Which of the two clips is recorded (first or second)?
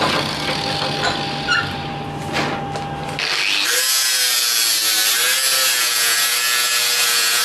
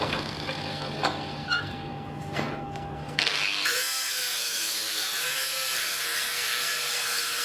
first